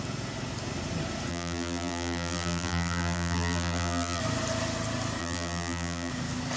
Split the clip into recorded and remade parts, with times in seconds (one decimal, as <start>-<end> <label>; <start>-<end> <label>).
0.0-1.3 recorded; 1.3-4.2 remade; 4.2-5.2 recorded; 5.2-6.1 remade; 6.1-6.6 recorded